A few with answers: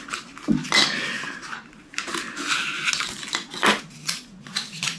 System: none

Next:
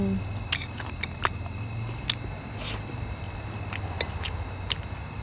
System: none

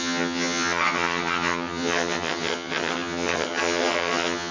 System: vocoder, HiFi-GAN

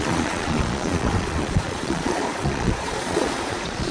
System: vocoder, Vocos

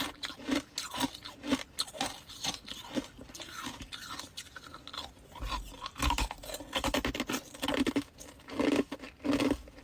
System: none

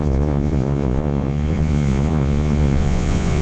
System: vocoder, Vocos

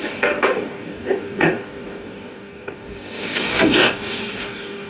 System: codec, DAC